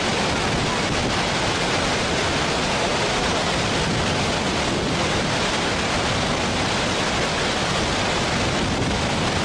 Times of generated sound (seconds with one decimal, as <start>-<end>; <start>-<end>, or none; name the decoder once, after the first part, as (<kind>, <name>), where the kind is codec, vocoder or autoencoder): none